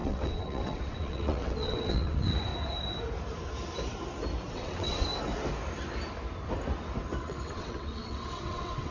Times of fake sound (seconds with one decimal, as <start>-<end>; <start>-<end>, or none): 0.0-2.5; 4.5-5.1; 7.2-8.9